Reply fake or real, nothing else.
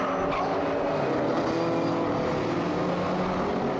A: real